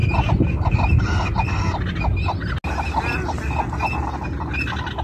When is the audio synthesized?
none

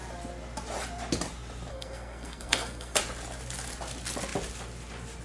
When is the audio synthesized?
1.7-3.0 (codec, SNAC)

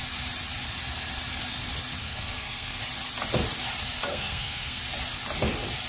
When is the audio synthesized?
2.0-2.8 (codec, SNAC); 4.1-4.8